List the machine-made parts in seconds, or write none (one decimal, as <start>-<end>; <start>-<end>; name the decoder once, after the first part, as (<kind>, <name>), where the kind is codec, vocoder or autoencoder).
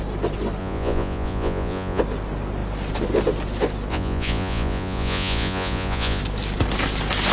0.6-2.0 (vocoder, Vocos); 3.9-6.2